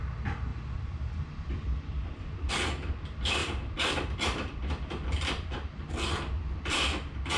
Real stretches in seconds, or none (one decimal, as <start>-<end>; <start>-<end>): 0.0-0.5; 2.5-3.4; 5.9-7.4